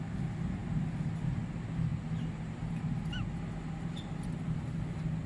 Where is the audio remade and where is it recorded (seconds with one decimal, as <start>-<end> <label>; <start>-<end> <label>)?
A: 0.0-5.3 recorded